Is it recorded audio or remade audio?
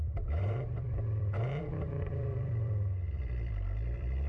remade